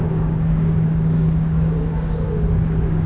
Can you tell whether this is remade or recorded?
remade